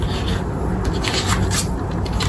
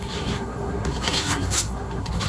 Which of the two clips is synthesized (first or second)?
second